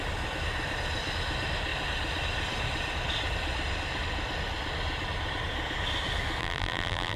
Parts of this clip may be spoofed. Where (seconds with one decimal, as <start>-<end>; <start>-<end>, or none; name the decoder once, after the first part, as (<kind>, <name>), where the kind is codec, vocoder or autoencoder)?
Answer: 6.4-7.2 (vocoder, BigVGAN v2)